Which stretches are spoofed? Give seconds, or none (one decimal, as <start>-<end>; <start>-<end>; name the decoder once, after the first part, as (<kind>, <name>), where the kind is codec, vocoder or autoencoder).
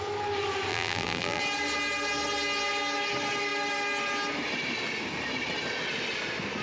0.7-1.4 (vocoder, BigVGAN v2)